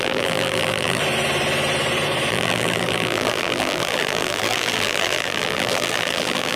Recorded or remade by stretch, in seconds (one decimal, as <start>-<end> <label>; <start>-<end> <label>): 0.0-1.0 remade; 1.0-2.3 recorded; 2.3-6.6 remade